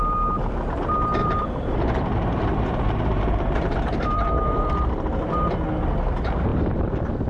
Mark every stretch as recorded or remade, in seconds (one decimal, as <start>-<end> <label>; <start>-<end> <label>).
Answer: 0.0-1.2 recorded; 1.2-5.3 remade; 5.3-7.3 recorded